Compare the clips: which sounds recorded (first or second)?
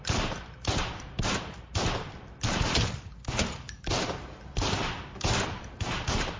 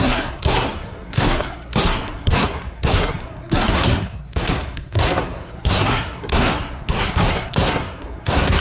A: first